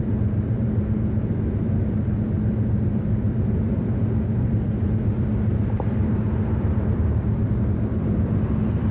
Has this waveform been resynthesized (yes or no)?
yes